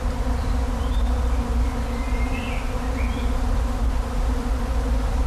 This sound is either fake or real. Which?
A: real